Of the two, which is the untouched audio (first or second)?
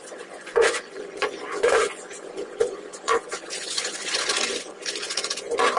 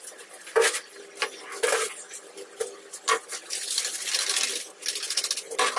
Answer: second